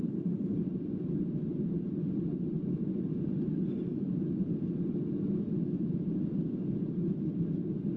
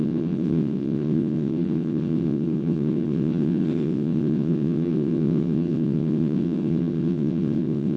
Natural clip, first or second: first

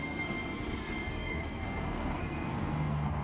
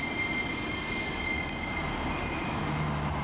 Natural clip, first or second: second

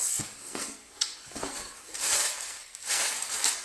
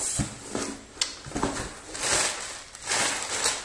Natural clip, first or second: second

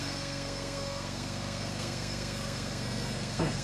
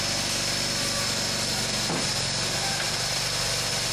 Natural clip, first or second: second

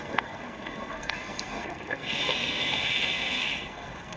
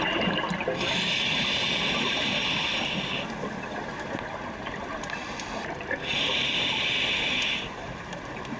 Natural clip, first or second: second